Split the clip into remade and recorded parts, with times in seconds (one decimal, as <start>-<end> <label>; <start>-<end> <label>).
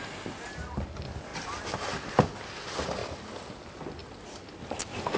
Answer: 0.0-3.0 recorded; 3.0-3.6 remade; 3.6-4.0 recorded; 4.0-4.7 remade; 4.7-5.2 recorded